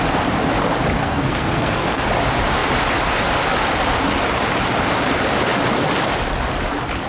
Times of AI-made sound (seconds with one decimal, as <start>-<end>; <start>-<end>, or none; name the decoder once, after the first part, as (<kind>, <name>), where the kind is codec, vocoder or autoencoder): 1.0-2.1 (codec, SNAC)